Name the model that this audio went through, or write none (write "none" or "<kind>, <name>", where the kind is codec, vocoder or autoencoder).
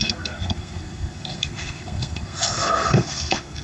codec, SNAC